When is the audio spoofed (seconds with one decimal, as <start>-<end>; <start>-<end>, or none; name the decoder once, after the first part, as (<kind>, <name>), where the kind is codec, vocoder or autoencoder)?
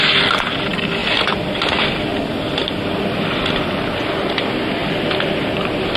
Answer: 1.0-4.3 (vocoder, BigVGAN v2); 4.8-6.0